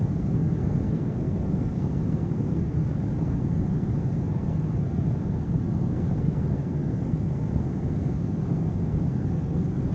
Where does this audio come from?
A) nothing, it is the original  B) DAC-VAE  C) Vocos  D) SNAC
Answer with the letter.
D